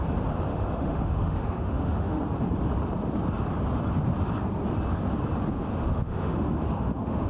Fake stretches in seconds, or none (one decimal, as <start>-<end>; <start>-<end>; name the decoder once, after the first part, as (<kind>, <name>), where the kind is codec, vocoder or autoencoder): 0.5-2.2 (autoencoder, DAC-VAE); 5.7-7.3